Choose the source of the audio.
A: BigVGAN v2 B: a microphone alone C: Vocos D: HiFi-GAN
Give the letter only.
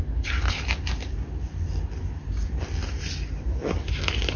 B